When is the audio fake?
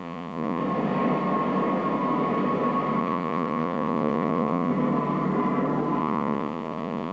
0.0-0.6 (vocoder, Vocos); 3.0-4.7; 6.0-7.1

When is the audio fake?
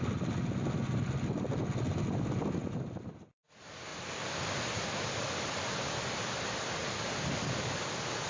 none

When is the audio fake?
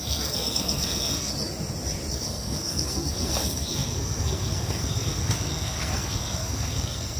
0.0-1.3 (codec, SNAC); 2.1-7.2